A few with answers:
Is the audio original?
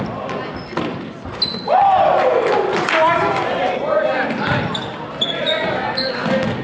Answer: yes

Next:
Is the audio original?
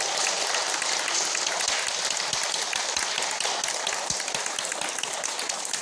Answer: yes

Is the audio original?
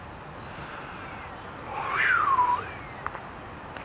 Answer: yes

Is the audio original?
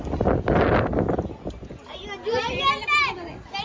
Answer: yes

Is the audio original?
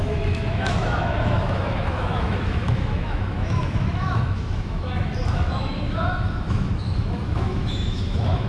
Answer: no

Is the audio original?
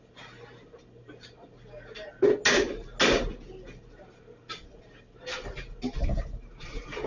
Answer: yes